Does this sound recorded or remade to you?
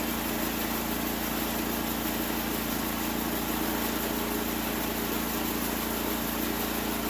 recorded